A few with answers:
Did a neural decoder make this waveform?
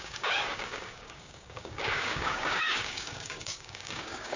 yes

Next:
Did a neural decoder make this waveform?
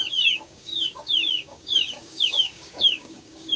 yes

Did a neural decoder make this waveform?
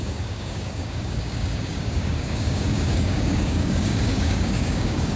yes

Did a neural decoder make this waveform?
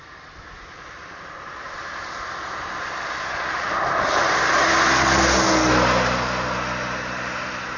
no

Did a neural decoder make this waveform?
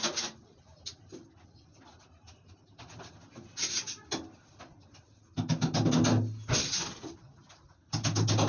no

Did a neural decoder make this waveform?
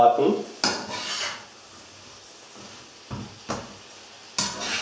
no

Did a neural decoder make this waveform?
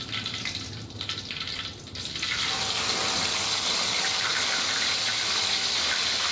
no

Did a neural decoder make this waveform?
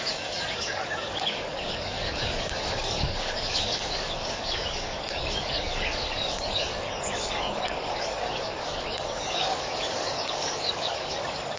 yes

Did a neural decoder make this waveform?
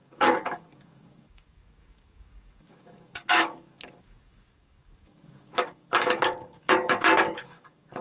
yes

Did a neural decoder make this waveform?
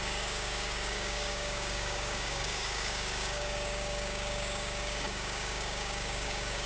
yes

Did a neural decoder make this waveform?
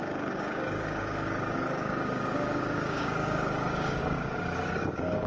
yes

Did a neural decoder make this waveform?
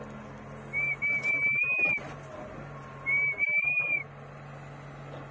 no